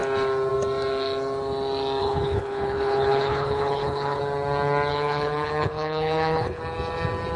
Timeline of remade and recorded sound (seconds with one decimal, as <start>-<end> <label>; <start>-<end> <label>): 0.0-2.0 recorded; 2.0-4.2 remade; 4.2-4.9 recorded; 4.9-6.6 remade; 6.6-7.4 recorded